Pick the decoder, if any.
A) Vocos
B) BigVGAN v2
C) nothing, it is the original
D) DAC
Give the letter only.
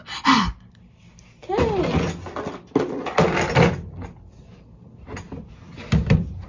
C